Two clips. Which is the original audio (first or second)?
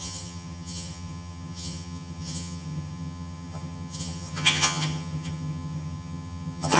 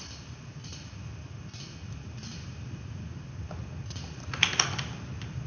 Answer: second